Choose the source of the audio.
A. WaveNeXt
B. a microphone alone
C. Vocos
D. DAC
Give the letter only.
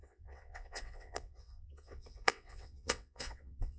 A